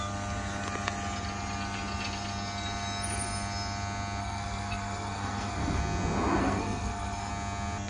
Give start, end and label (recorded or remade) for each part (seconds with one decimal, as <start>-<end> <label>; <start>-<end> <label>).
0.0-4.2 recorded; 4.2-5.8 remade; 5.8-6.4 recorded; 6.4-7.3 remade; 7.3-7.9 recorded